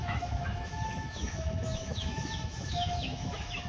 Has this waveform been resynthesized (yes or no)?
yes